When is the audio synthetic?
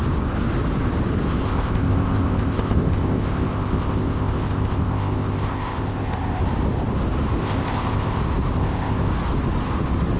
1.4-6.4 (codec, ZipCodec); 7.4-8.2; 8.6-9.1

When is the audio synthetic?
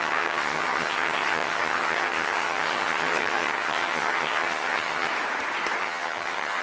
0.0-5.1 (vocoder, HiFi-GAN); 5.8-6.6